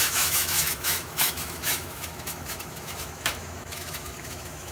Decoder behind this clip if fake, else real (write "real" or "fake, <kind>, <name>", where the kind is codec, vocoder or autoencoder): fake, autoencoder, DAC-VAE